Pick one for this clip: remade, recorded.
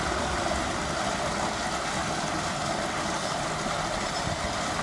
recorded